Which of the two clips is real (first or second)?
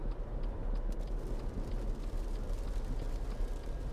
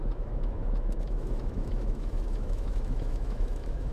first